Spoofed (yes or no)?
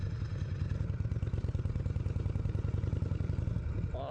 no